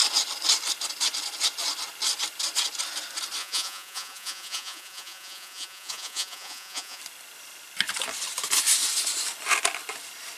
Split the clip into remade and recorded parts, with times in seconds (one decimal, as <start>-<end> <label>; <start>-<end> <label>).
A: 0.0-3.4 recorded; 3.4-7.0 remade; 7.0-10.4 recorded